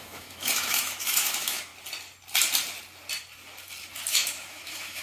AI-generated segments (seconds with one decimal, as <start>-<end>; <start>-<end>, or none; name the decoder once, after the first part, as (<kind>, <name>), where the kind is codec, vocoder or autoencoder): 0.0-1.7 (autoencoder, DAC-VAE); 4.1-5.0